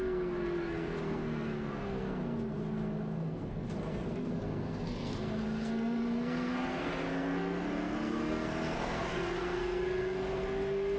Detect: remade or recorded remade